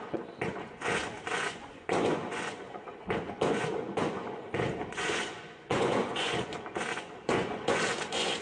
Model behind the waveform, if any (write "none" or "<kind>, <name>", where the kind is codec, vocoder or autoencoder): vocoder, Vocos